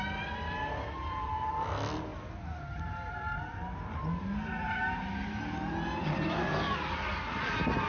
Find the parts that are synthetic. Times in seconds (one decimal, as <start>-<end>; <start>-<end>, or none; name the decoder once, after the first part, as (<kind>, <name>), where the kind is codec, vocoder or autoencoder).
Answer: none